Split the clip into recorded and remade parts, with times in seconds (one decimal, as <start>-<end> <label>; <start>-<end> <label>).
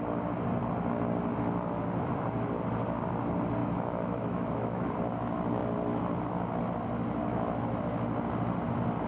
0.0-3.6 recorded; 3.6-4.9 remade; 4.9-7.2 recorded; 7.2-7.8 remade; 7.8-9.1 recorded